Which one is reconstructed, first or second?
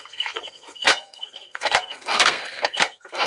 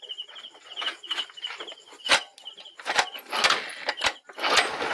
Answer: first